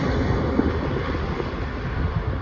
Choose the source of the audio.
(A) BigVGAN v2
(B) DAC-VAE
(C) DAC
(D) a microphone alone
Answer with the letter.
D